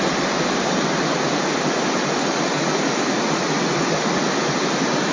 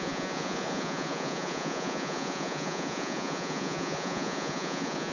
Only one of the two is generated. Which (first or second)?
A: second